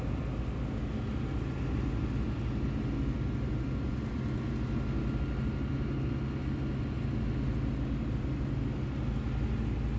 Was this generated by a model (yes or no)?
no